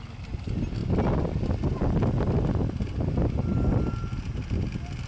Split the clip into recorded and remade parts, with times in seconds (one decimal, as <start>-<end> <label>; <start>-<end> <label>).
0.0-5.1 recorded